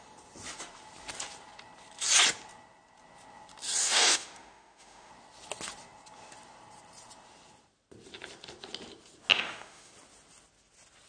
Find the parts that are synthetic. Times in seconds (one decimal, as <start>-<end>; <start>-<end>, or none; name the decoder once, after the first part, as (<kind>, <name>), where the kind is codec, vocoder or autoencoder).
3.8-5.1 (autoencoder, DAC-VAE); 9.3-9.9